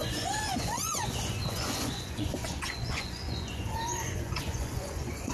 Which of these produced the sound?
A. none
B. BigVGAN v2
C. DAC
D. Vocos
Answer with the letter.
D